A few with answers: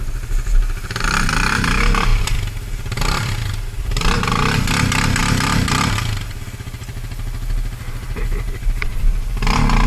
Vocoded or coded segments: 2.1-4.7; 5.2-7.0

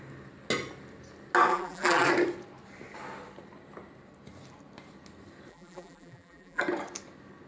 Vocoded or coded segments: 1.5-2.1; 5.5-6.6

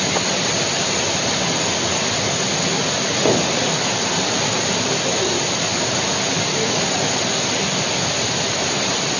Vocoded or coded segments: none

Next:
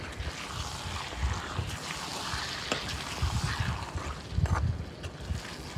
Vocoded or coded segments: none

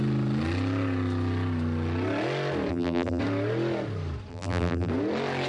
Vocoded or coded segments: 2.7-3.2; 4.3-4.9

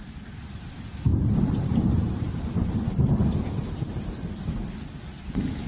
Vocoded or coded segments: 1.1-4.1

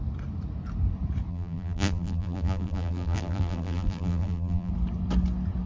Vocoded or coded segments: 1.3-4.7

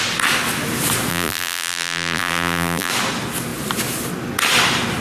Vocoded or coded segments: 1.1-2.9